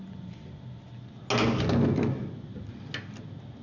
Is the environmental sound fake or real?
real